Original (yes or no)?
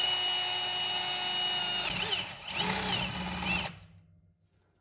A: yes